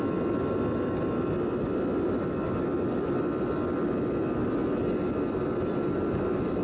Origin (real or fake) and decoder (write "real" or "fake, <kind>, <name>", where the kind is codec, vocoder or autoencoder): real